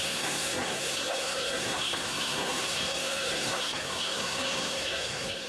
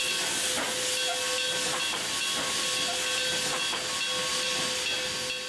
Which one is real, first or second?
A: second